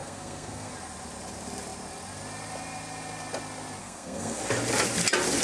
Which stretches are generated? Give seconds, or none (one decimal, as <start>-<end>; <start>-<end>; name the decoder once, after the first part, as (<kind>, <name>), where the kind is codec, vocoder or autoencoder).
0.0-0.7 (codec, SNAC); 3.8-4.4